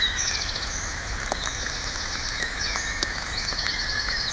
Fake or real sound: fake